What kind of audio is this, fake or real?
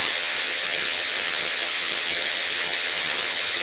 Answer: fake